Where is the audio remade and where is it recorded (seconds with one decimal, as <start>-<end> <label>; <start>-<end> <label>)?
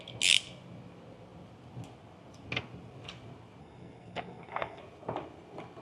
0.0-3.6 recorded; 3.6-4.8 remade; 4.8-5.8 recorded